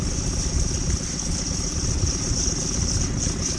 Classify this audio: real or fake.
real